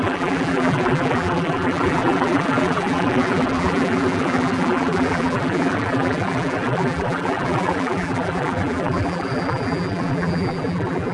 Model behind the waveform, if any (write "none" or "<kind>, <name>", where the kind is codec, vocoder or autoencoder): vocoder, BigVGAN v2